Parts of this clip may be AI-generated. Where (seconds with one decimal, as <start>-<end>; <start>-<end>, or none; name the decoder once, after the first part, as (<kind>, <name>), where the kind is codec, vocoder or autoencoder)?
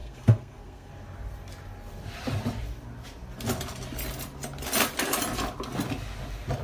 0.0-0.9 (codec, SNAC)